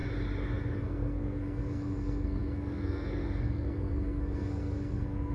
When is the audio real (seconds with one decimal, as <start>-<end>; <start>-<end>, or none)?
0.0-0.8